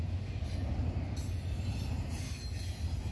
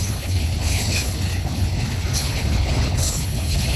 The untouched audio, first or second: first